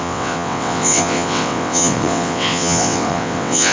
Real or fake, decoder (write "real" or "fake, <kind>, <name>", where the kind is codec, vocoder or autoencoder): fake, vocoder, WaveNeXt